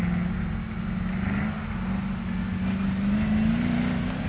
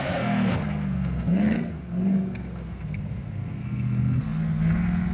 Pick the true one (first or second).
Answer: first